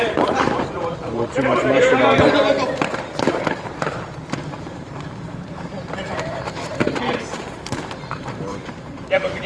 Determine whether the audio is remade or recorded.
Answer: remade